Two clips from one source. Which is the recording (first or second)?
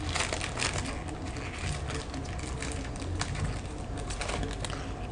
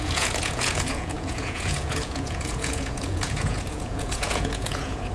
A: first